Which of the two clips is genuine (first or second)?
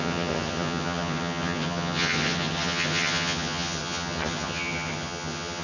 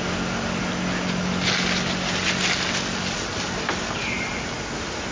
second